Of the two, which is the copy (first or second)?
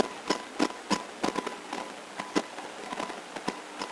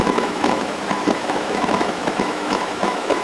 second